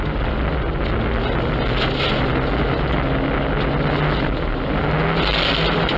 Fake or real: real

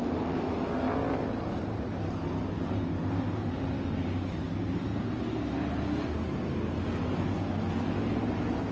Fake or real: real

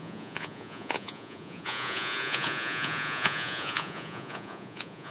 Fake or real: fake